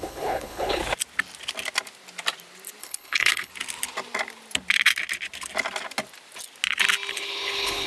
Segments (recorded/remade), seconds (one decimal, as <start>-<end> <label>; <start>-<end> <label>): 0.0-0.8 remade; 0.8-2.8 recorded; 2.8-3.5 remade; 3.5-7.1 recorded; 7.1-7.9 remade